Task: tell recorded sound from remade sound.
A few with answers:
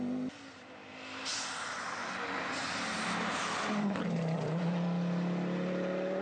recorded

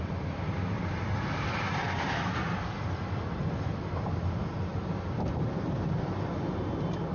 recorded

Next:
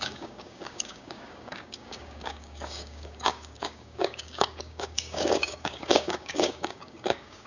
remade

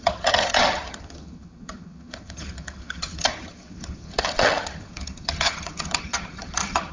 remade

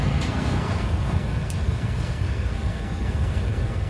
remade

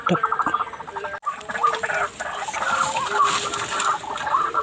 recorded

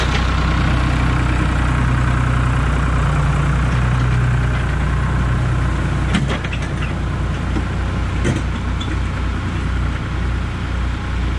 recorded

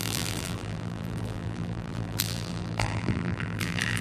remade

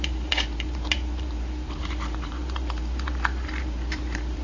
remade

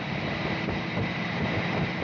recorded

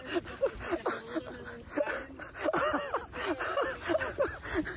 recorded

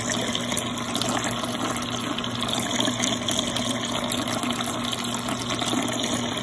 recorded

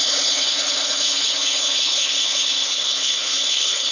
remade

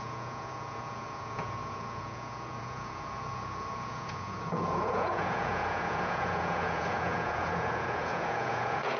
remade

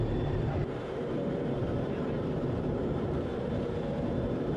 remade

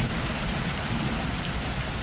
recorded